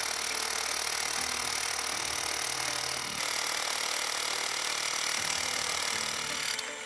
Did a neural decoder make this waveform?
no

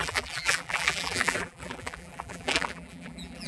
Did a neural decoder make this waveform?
yes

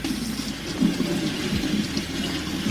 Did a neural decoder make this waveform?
yes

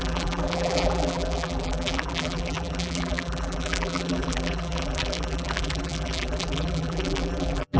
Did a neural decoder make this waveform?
yes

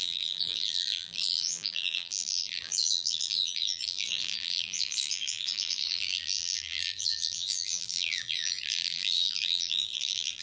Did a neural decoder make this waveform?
yes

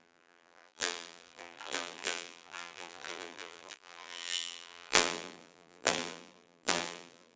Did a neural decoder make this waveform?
yes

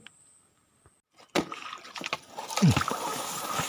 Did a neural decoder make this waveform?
no